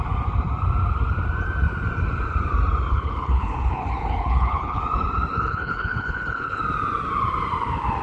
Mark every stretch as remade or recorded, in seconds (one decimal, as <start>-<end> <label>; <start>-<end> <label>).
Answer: 0.0-2.9 recorded; 2.9-4.8 remade; 4.8-5.3 recorded; 5.3-6.6 remade; 6.6-8.0 recorded